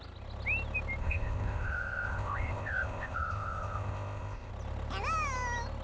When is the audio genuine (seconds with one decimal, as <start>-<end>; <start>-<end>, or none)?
0.0-1.0; 4.5-5.8